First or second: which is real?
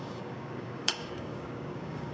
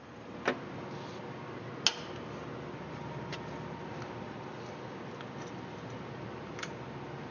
second